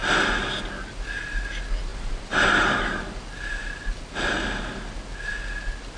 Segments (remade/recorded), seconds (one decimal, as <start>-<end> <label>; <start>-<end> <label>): 0.0-1.9 recorded; 1.9-3.0 remade; 3.0-6.0 recorded